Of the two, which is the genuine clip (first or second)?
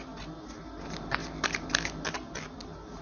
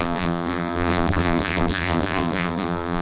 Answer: first